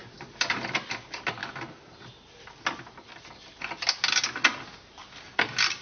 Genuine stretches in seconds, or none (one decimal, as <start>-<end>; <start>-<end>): 0.0-5.8